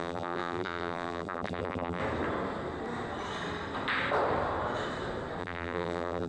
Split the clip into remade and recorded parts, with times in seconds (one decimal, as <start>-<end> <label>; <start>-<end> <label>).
0.0-2.0 remade; 2.0-5.4 recorded; 5.4-6.3 remade